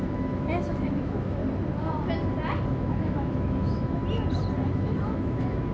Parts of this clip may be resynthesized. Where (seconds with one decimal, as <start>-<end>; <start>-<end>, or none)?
0.0-1.4; 2.7-4.0; 4.7-5.7